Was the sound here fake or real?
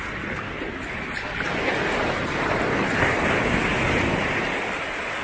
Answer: real